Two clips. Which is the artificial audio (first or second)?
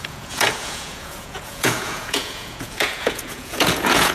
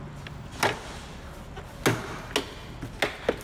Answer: first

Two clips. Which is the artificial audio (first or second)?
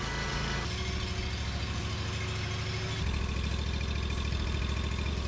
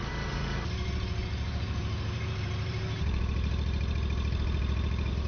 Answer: second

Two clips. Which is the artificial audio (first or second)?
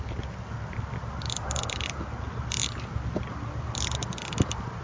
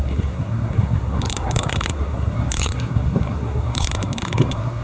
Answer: second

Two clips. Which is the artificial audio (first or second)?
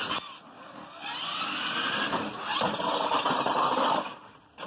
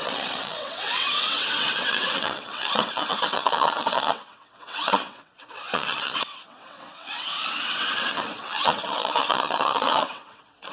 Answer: second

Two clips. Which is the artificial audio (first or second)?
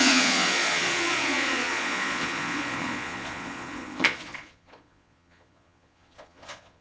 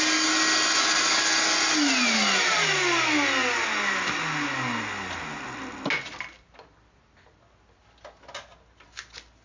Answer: first